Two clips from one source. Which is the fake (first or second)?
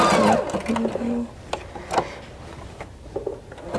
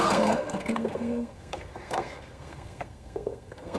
second